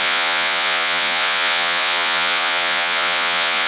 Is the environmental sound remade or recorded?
remade